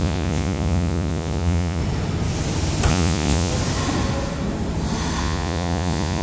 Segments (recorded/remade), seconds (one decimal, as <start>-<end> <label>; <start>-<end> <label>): 0.0-1.8 remade; 1.8-2.9 recorded; 2.9-3.5 remade; 3.5-5.2 recorded; 5.2-6.2 remade